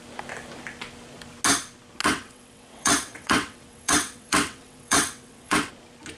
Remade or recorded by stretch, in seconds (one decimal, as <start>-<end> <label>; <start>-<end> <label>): 0.0-2.0 recorded; 2.0-5.7 remade; 5.7-6.2 recorded